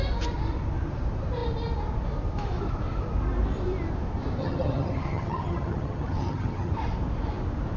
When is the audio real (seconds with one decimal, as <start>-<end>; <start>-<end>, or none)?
0.0-4.4; 6.7-7.8